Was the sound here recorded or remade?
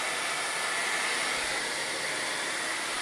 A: recorded